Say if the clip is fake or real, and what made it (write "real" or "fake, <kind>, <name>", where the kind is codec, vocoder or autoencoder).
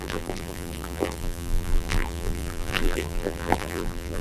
fake, vocoder, BigVGAN v2